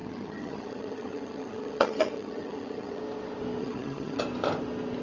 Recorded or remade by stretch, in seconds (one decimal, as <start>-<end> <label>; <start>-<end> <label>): 0.0-3.0 remade; 3.0-3.6 recorded; 3.6-4.2 remade; 4.2-5.0 recorded